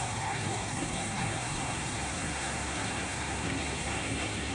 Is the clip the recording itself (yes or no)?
no